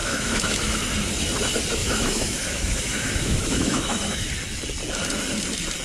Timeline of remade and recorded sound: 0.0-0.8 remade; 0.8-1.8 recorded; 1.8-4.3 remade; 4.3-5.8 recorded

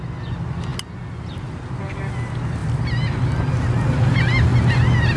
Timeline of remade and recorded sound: 0.0-5.2 recorded

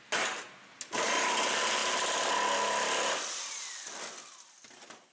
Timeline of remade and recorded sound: 0.0-5.1 recorded

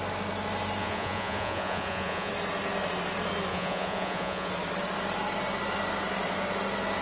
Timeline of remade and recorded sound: 0.0-0.8 recorded; 0.8-2.3 remade; 2.3-3.5 recorded; 3.5-4.5 remade; 4.5-7.0 recorded

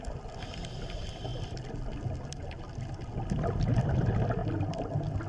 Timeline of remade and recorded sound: 0.0-5.3 recorded